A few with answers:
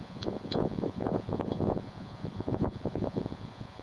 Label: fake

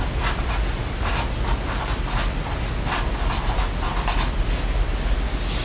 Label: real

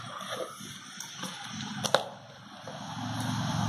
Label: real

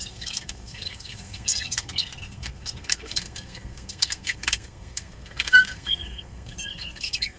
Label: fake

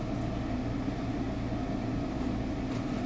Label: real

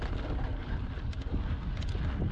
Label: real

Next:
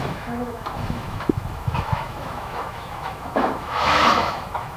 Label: fake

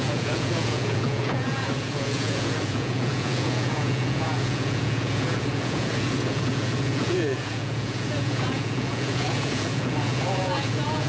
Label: fake